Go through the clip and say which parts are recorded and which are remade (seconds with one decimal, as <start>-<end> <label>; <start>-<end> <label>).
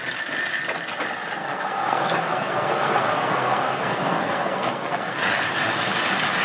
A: 0.0-1.4 recorded; 1.4-5.2 remade; 5.2-6.4 recorded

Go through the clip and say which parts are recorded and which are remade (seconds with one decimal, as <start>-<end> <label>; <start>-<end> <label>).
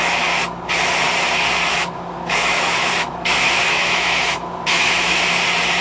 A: 0.0-1.7 recorded; 1.7-5.2 remade; 5.2-5.8 recorded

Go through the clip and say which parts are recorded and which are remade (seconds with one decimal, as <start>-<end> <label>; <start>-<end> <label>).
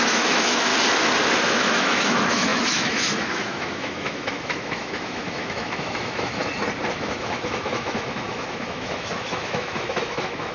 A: 0.0-0.7 remade; 0.7-1.4 recorded; 1.4-6.4 remade; 6.4-6.9 recorded; 6.9-10.5 remade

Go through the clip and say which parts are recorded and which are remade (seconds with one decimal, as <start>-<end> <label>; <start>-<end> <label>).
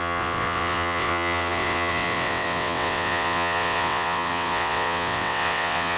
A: 0.0-6.0 remade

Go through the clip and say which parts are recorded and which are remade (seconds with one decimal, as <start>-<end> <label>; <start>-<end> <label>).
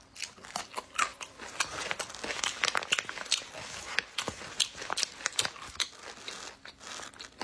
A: 0.0-7.4 recorded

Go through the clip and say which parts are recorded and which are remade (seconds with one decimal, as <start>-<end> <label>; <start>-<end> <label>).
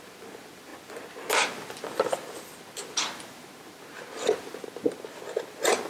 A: 0.0-5.9 recorded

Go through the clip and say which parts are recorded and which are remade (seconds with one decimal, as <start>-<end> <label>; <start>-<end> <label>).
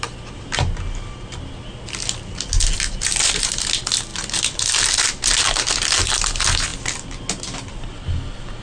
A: 0.0-8.6 recorded